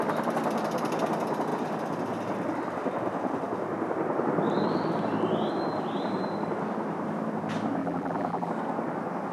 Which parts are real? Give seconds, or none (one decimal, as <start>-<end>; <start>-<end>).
0.0-7.8; 8.5-9.3